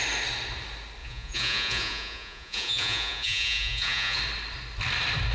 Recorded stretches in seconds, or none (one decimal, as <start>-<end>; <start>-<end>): 0.0-1.0; 4.2-5.3